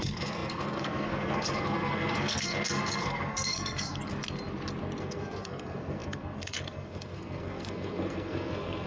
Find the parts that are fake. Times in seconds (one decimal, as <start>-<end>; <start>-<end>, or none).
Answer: 0.0-4.1; 5.0-8.9